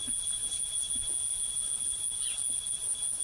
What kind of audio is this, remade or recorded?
recorded